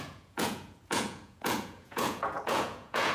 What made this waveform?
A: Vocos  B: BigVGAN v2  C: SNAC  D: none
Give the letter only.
A